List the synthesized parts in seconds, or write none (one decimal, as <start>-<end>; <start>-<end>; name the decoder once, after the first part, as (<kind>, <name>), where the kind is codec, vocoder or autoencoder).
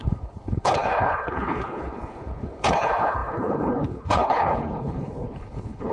0.0-5.9 (codec, HILCodec)